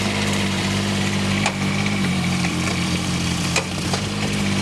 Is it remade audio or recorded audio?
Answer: remade